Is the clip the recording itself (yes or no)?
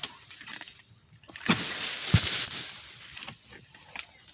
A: yes